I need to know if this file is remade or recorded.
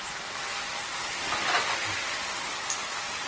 recorded